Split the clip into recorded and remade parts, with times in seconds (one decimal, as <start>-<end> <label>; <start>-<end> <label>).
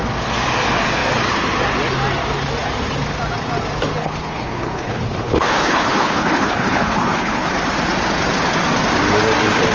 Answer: 0.0-4.0 recorded; 4.0-7.5 remade; 7.5-9.7 recorded